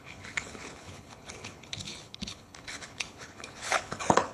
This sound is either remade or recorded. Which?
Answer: remade